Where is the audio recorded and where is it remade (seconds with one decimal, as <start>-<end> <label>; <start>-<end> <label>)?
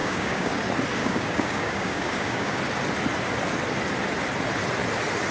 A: 0.0-0.6 remade; 0.6-1.0 recorded; 1.0-2.6 remade; 2.6-5.3 recorded